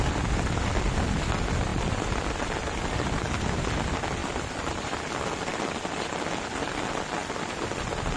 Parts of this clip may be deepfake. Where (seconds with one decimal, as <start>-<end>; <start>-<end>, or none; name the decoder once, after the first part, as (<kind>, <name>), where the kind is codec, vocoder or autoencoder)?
1.7-2.9 (vocoder, BigVGAN v2); 4.2-5.6; 7.2-8.2